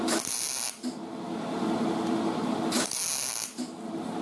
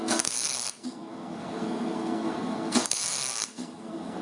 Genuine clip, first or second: first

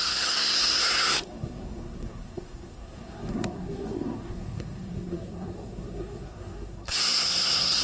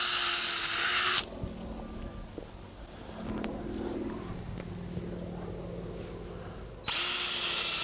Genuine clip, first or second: second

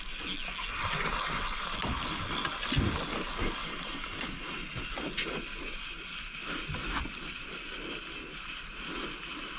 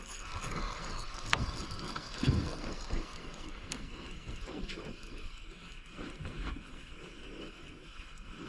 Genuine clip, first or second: first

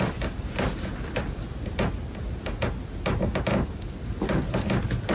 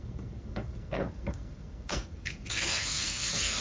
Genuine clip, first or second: first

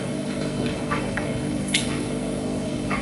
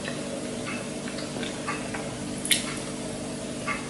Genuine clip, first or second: second